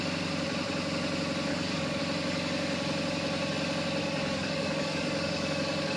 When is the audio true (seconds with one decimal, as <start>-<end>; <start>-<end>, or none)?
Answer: 0.0-1.5; 2.0-4.0